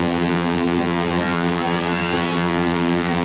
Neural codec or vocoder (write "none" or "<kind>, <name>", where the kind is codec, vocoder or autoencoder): vocoder, BigVGAN v2